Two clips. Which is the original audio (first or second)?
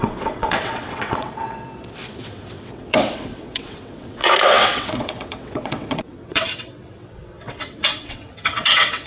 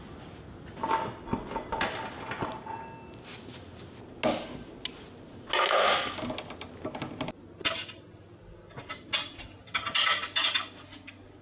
second